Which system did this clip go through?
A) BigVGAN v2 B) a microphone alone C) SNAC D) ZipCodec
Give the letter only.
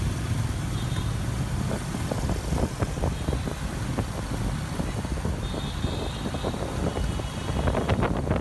B